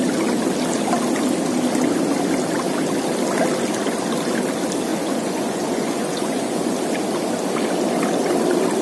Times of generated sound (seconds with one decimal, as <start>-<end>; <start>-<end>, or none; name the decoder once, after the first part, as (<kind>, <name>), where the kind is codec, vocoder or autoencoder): 4.9-6.8 (vocoder, Vocos)